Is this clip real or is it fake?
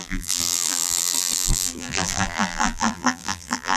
fake